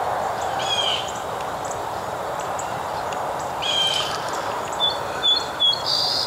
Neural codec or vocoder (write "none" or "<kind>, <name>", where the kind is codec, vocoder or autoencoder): vocoder, BigVGAN v2